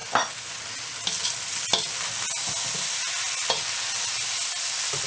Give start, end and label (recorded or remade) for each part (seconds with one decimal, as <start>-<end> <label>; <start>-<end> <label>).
0.0-0.6 remade; 0.6-5.1 recorded